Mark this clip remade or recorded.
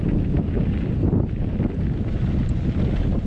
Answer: recorded